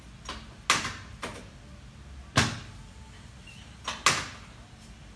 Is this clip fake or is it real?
real